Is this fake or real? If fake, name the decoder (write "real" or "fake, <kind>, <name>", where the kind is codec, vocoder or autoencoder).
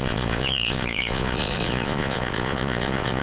fake, vocoder, Vocos